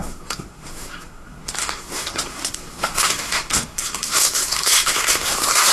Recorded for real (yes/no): no